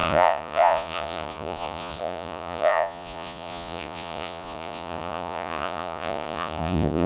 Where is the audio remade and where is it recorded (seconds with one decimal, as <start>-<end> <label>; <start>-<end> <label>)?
0.0-7.1 remade